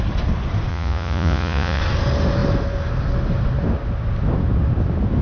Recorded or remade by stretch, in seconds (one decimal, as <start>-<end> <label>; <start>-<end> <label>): 0.0-0.7 recorded; 0.7-1.8 remade; 1.8-5.2 recorded